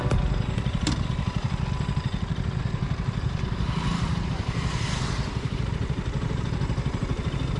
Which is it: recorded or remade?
remade